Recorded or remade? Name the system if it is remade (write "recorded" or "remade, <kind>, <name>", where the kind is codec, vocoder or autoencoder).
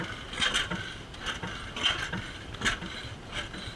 recorded